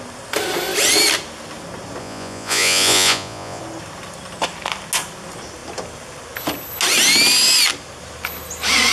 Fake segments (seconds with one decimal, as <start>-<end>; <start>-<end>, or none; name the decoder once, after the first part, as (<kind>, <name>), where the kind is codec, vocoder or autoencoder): 2.0-3.6 (vocoder, Vocos)